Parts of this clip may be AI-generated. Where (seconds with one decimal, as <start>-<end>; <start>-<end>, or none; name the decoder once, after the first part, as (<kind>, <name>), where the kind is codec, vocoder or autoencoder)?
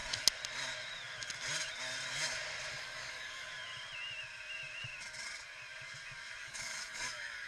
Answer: 2.7-3.5 (codec, DAC); 6.4-7.5